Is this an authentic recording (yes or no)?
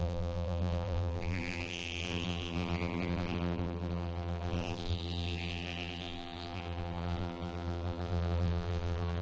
no